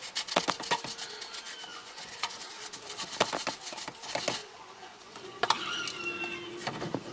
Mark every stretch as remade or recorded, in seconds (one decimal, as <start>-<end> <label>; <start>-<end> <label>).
0.0-1.7 recorded; 1.7-2.5 remade; 2.5-4.4 recorded; 4.4-5.4 remade; 5.4-7.1 recorded